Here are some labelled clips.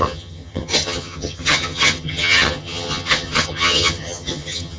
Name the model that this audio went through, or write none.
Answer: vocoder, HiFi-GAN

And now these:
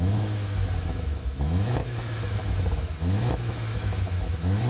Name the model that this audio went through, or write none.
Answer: autoencoder, DAC-VAE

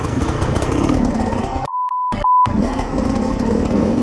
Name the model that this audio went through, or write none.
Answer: codec, SNAC